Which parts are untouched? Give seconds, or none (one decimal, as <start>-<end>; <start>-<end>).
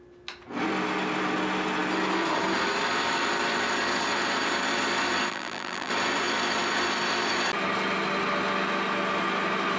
0.0-5.3; 5.9-9.8